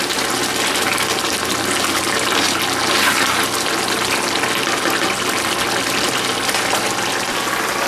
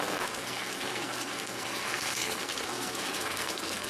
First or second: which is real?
first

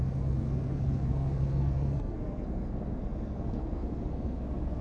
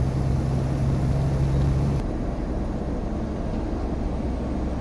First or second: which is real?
second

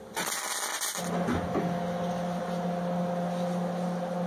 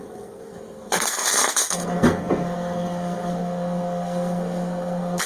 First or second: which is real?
first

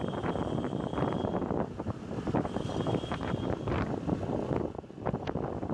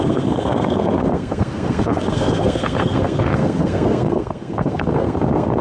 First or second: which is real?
first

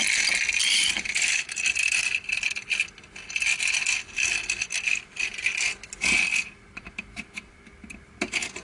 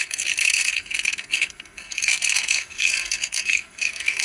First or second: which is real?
first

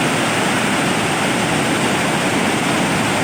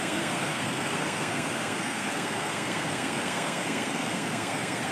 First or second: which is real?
first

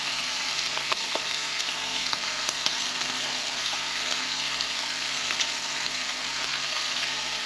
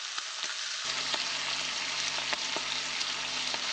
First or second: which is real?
second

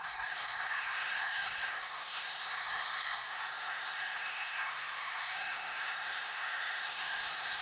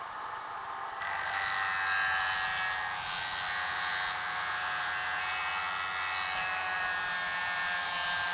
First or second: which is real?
second